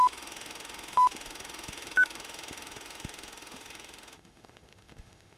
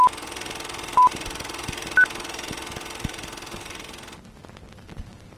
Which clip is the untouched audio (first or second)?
second